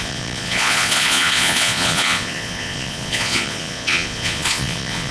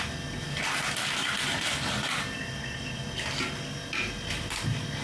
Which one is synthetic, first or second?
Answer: first